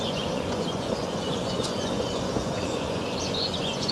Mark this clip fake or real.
fake